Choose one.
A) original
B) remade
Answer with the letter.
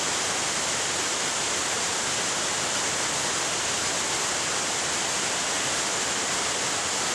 A